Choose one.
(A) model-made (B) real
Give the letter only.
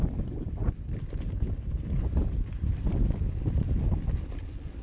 B